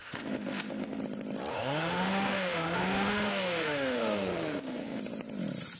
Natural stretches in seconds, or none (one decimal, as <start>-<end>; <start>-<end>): 1.0-1.5; 5.0-5.8